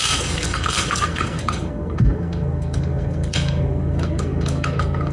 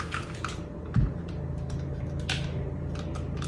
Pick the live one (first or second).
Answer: second